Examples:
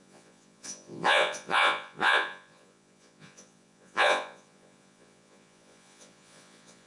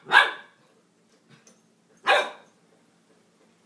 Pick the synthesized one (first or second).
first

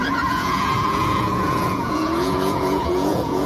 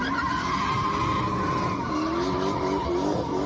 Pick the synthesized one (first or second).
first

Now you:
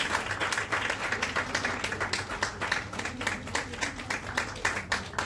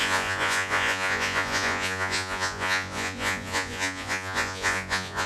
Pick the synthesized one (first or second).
second